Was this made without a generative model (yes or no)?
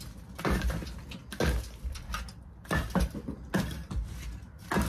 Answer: yes